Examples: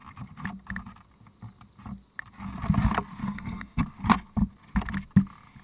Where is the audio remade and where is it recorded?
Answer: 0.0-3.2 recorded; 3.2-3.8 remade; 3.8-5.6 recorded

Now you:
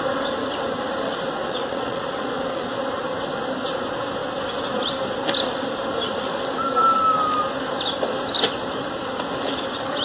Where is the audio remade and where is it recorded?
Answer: 0.0-1.4 recorded; 1.4-2.7 remade; 2.7-10.0 recorded